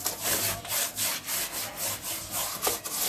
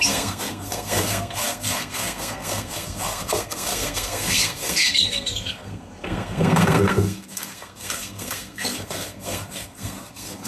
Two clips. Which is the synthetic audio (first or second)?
second